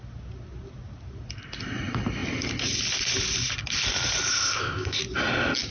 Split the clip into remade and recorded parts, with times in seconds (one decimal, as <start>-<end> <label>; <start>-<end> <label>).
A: 0.0-4.3 recorded; 4.3-5.0 remade; 5.0-5.7 recorded